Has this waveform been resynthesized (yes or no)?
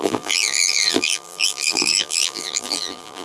yes